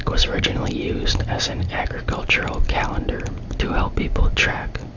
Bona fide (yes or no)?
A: yes